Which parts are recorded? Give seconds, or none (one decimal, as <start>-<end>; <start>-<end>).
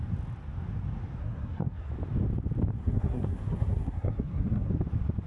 0.0-1.2; 1.9-2.8; 4.7-5.3